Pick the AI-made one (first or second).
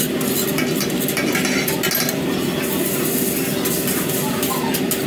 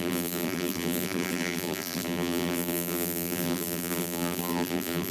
second